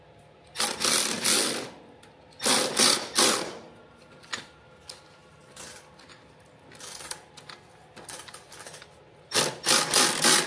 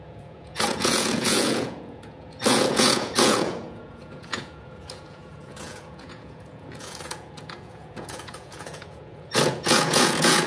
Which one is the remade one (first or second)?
second